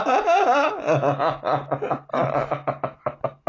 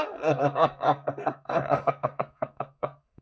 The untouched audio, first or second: first